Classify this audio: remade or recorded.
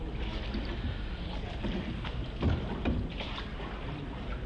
recorded